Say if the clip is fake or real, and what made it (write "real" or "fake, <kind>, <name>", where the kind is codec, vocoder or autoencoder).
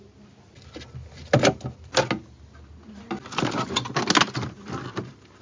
real